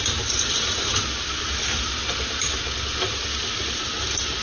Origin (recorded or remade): recorded